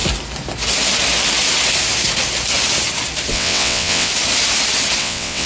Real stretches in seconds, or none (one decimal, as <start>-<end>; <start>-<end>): 0.0-3.3; 4.1-5.0